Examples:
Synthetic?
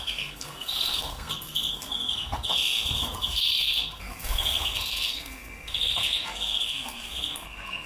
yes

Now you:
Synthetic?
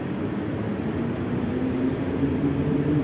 no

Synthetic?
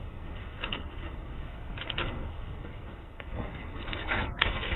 yes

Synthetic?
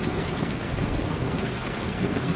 yes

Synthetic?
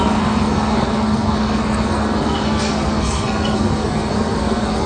yes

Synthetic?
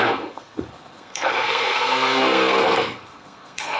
yes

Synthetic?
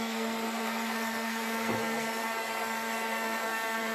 yes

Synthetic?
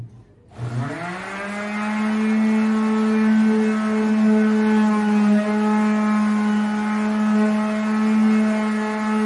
no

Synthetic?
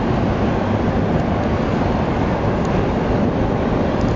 no